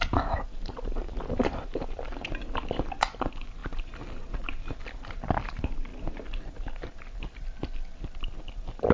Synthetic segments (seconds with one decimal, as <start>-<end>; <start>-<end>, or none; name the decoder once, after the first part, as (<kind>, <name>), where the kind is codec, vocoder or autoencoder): none